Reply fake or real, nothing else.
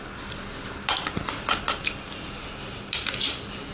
real